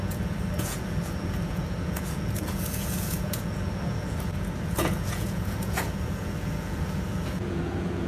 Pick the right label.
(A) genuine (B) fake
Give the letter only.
B